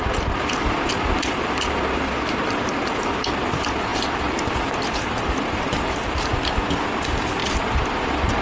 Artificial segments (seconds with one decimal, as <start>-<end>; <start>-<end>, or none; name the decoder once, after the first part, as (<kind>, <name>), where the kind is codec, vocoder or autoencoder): none

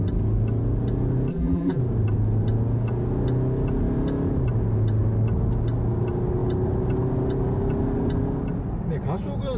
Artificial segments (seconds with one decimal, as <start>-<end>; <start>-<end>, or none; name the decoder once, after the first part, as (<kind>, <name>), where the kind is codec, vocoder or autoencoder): 1.3-1.8 (vocoder, BigVGAN v2)